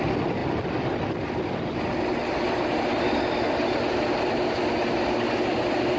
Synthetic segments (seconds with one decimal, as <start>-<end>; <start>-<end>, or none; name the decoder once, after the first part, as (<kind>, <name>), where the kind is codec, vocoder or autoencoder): none